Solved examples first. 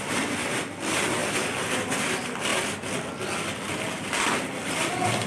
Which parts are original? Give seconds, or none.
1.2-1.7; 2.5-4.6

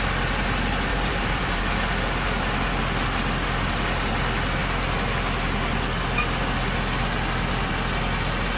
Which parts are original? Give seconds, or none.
0.0-0.9; 1.6-8.6